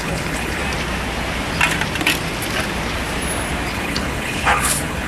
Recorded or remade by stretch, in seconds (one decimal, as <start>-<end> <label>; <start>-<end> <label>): 0.0-0.6 remade; 0.6-3.7 recorded; 3.7-5.1 remade